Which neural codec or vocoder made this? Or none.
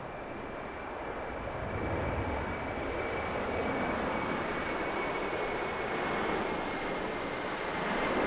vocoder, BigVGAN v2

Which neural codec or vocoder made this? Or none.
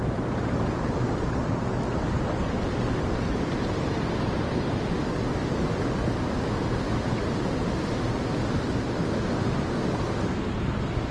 none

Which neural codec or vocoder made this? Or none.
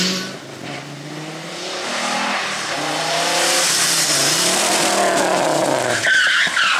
vocoder, BigVGAN v2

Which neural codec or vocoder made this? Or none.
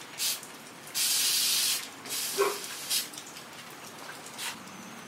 none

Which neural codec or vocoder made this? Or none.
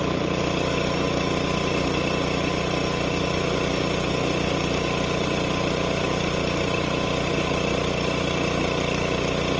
none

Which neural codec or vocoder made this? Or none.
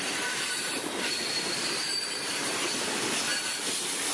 vocoder, BigVGAN v2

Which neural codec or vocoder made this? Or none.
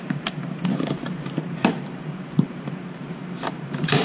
vocoder, BigVGAN v2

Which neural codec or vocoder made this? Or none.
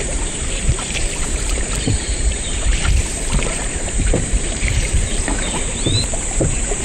vocoder, BigVGAN v2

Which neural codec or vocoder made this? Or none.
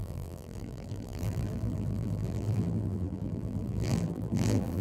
vocoder, BigVGAN v2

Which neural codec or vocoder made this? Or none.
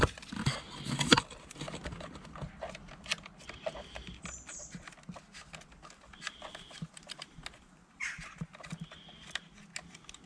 none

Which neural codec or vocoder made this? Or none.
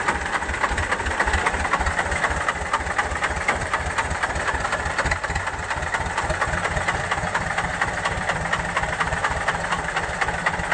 vocoder, BigVGAN v2